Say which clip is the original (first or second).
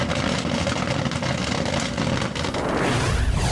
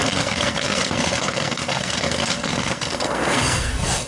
first